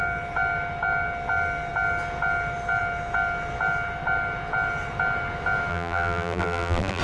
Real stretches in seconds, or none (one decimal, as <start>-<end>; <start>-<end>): 0.0-5.7